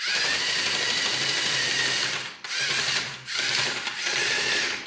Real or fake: fake